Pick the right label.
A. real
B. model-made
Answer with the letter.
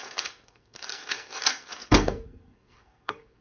B